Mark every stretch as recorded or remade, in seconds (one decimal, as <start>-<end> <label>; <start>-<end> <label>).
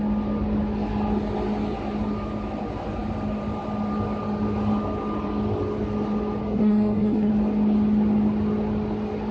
0.0-6.4 recorded; 6.4-7.3 remade; 7.3-9.3 recorded